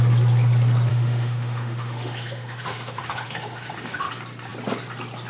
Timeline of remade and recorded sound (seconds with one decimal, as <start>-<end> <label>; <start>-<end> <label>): 0.0-0.9 recorded; 0.9-4.1 remade; 4.1-5.3 recorded